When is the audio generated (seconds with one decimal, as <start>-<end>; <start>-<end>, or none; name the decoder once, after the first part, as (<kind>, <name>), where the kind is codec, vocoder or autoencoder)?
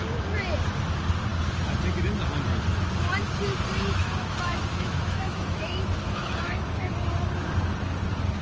3.9-6.9 (autoencoder, DAC-VAE)